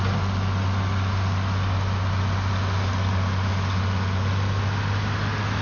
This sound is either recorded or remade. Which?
recorded